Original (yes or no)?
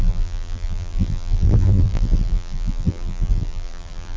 no